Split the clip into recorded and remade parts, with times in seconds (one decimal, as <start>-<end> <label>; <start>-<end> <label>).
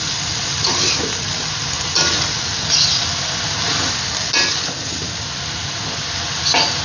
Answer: 0.0-6.8 recorded